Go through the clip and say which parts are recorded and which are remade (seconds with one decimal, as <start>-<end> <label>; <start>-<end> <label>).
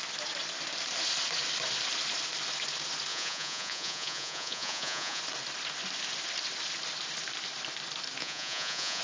0.0-3.1 recorded; 3.1-5.2 remade; 5.2-8.2 recorded; 8.2-9.0 remade